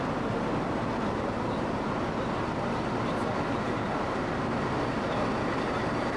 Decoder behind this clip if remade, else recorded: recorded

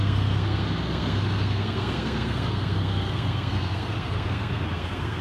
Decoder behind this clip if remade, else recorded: remade, codec, SNAC